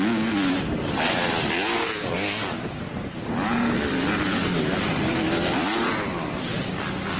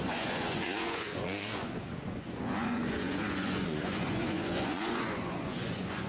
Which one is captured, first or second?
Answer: first